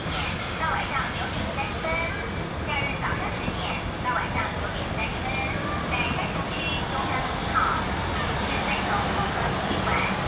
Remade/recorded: recorded